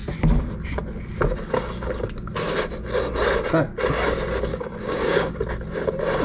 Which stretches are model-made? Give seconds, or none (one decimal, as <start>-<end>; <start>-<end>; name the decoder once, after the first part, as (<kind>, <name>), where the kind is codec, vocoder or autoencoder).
4.5-5.4 (codec, DAC)

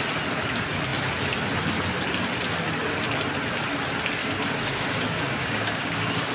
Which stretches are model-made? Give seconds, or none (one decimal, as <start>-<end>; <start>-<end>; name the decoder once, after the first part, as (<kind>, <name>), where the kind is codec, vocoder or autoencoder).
4.2-6.3 (codec, DAC)